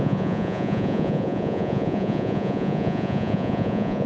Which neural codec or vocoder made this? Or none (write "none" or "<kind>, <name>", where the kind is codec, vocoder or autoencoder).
vocoder, Vocos